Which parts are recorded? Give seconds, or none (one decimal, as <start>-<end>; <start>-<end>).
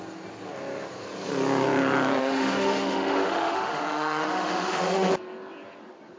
0.0-2.2; 5.1-6.2